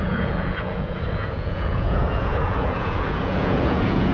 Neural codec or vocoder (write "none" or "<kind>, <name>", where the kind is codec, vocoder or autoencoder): vocoder, Vocos